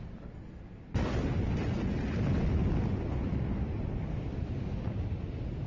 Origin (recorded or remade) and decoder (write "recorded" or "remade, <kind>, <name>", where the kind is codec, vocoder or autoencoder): recorded